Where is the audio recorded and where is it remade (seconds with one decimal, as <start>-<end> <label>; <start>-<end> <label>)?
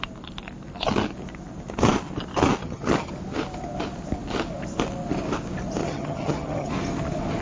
0.0-2.6 recorded; 2.6-3.1 remade; 3.1-5.8 recorded; 5.8-6.7 remade; 6.7-7.4 recorded